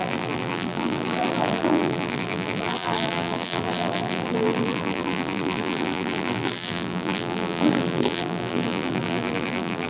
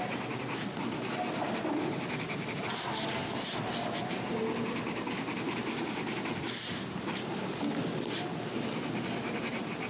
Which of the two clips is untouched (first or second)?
second